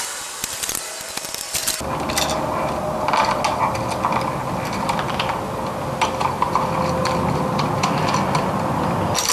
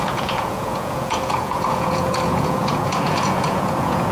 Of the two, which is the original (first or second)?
first